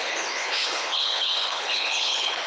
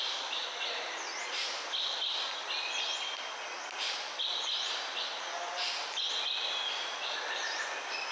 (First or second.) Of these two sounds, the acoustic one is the second